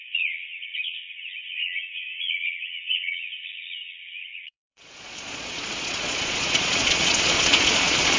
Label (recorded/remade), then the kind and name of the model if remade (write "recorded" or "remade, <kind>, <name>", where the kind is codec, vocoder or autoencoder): remade, vocoder, Vocos